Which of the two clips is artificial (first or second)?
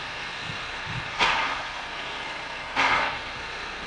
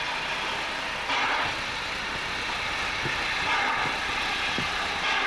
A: first